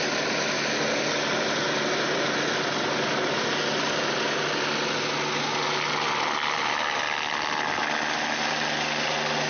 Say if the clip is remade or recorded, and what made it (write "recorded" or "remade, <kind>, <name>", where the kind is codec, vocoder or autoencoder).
recorded